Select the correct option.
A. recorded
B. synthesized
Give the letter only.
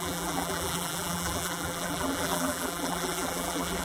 B